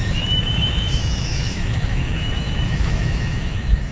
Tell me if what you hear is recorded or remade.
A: remade